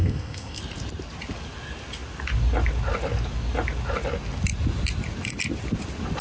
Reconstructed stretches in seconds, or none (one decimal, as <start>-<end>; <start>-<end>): 0.0-0.6